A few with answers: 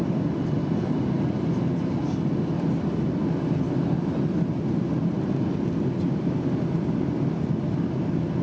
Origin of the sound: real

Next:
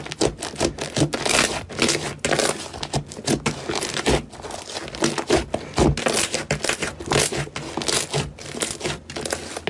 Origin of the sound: real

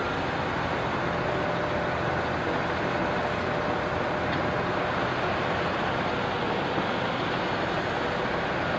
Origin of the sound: real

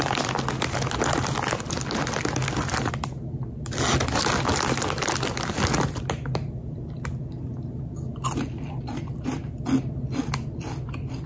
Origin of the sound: real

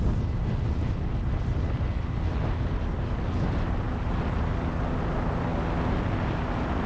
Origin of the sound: real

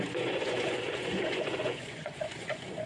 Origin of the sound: fake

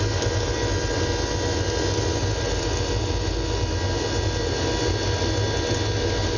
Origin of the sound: real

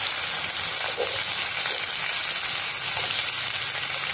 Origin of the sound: real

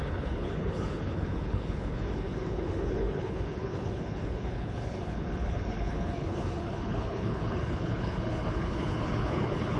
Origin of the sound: fake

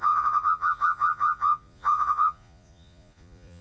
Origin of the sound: fake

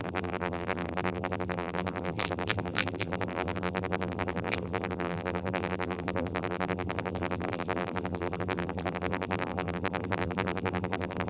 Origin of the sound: fake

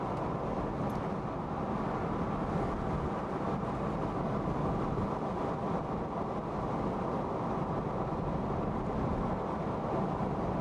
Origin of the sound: real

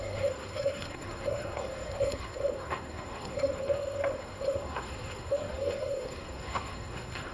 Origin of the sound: fake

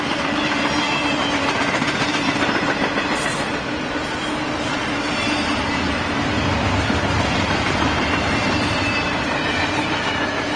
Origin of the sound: real